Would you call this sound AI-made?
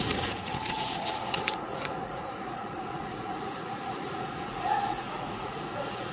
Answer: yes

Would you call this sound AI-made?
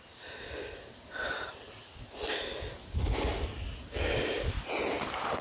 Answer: no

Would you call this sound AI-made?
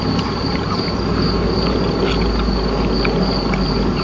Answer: no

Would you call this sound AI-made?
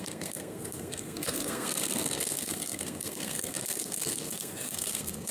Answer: yes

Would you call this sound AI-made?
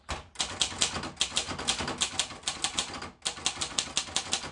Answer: no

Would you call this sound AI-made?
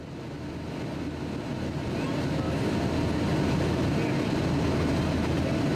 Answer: no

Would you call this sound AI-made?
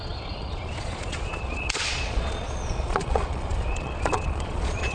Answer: yes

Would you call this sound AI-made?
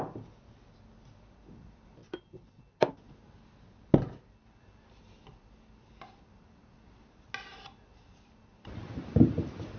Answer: no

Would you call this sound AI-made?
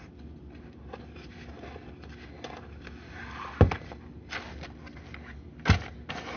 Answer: no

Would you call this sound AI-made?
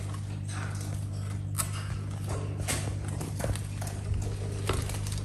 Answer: no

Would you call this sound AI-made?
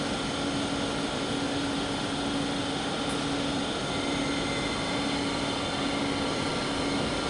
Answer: no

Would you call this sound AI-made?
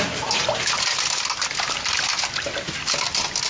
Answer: no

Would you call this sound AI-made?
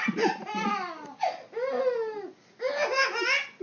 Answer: no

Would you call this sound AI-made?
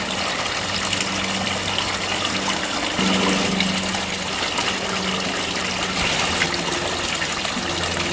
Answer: no